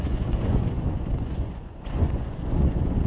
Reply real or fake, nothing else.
fake